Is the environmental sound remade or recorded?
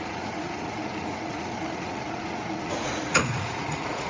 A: remade